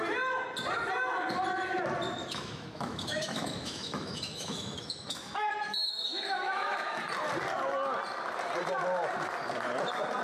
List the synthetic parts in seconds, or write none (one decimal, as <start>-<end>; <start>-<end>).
2.2-7.0